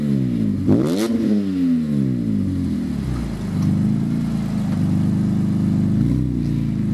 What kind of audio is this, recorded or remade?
recorded